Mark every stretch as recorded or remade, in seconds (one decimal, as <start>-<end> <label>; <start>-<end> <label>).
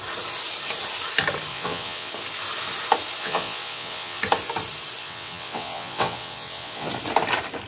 0.0-1.5 recorded; 1.5-2.1 remade; 2.1-3.2 recorded; 3.2-4.2 remade; 4.2-5.0 recorded; 5.0-6.9 remade; 6.9-7.7 recorded